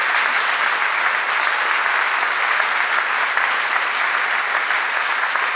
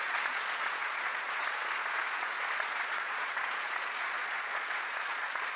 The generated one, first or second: second